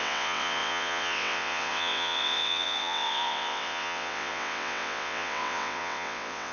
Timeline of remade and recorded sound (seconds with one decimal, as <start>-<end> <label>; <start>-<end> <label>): 0.0-6.5 remade